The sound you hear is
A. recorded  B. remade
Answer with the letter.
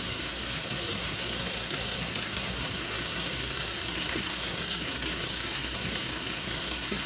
B